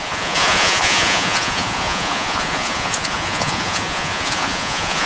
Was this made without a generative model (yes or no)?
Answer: no